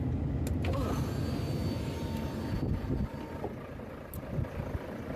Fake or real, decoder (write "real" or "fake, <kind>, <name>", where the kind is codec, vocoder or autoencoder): real